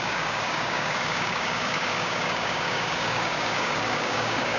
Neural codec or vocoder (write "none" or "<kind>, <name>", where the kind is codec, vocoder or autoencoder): codec, DAC